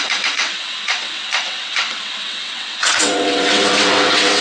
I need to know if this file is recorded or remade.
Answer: remade